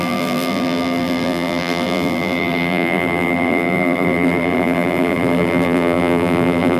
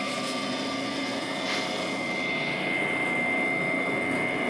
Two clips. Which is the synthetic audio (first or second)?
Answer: first